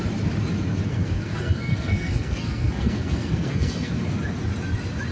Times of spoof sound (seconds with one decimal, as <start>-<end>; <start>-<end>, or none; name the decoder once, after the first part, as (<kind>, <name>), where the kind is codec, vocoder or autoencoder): 0.9-4.0 (codec, SNAC)